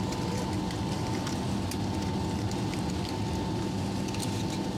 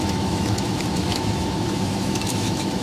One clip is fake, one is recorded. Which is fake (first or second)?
second